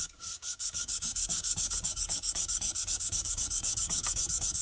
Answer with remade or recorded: remade